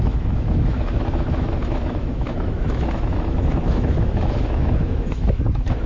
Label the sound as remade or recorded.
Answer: remade